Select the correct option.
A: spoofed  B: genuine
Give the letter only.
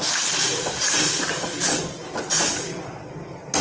B